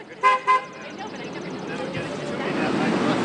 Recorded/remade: recorded